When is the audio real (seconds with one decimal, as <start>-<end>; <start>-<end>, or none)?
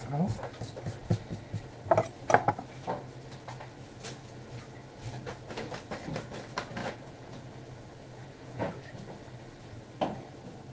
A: 0.0-6.8; 7.6-8.2; 8.7-10.7